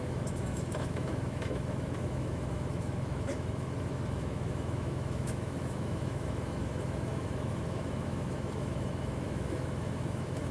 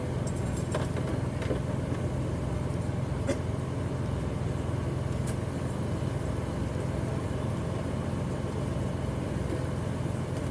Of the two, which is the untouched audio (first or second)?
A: second